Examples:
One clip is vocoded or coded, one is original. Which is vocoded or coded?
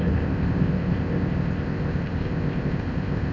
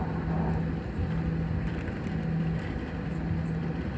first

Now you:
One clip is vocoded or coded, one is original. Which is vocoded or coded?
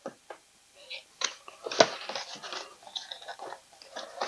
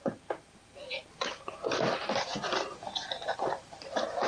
second